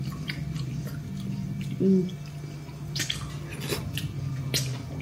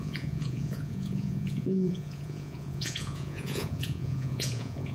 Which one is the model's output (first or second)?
second